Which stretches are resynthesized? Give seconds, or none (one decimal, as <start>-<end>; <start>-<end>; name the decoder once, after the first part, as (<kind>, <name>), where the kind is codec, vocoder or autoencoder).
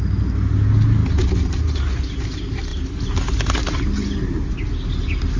none